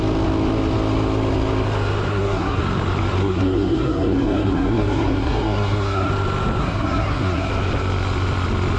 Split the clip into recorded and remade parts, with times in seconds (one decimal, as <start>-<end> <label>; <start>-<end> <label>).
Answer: 0.0-2.1 recorded; 2.1-2.6 remade; 2.6-3.2 recorded; 3.2-6.1 remade; 6.1-6.6 recorded; 6.6-7.5 remade; 7.5-8.8 recorded